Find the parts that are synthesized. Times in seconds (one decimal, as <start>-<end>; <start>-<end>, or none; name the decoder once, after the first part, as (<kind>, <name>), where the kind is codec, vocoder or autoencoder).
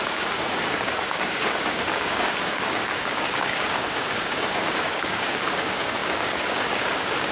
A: 0.0-7.3 (codec, DAC)